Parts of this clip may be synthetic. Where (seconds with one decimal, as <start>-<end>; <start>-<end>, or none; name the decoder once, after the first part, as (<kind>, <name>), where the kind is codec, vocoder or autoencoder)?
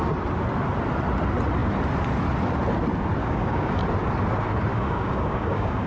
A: 3.2-3.8 (codec, DAC); 4.7-5.9